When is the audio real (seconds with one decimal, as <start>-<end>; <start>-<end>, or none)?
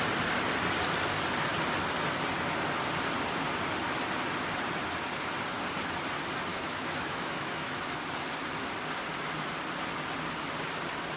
0.0-6.5; 7.8-11.2